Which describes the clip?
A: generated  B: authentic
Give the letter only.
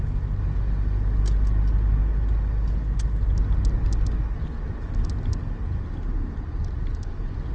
B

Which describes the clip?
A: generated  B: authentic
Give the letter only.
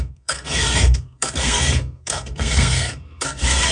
A